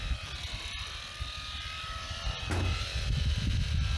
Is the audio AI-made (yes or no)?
no